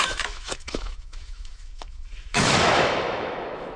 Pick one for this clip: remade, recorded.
remade